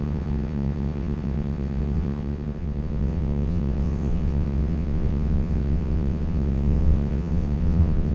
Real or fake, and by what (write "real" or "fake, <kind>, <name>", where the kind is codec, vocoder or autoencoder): fake, vocoder, WaveNeXt